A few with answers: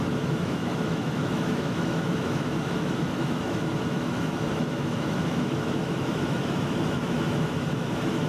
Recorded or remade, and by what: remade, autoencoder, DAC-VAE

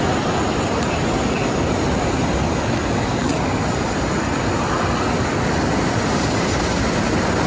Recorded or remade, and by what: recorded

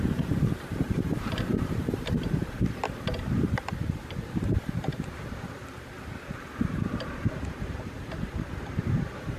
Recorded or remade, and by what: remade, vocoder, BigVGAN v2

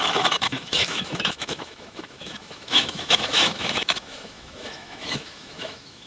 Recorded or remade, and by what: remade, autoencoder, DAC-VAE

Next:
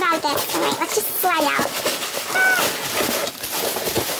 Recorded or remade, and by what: recorded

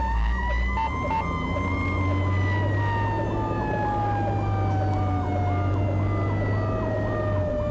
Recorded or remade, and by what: recorded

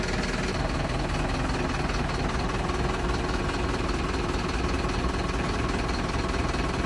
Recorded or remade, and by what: recorded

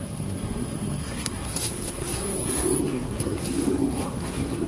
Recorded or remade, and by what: remade, codec, SNAC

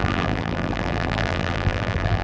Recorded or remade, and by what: remade, vocoder, BigVGAN v2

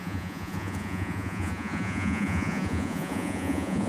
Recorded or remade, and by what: remade, vocoder, Vocos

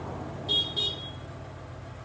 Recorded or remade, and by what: recorded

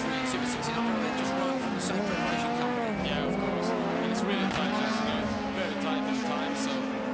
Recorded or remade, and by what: recorded